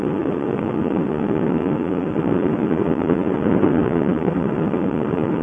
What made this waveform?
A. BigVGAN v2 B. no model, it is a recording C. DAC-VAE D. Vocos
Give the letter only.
D